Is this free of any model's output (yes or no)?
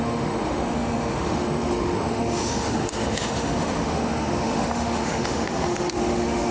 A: no